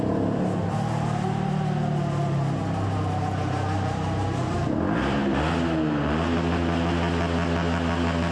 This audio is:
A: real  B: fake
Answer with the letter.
A